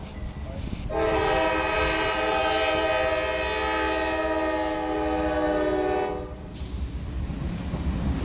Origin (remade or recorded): recorded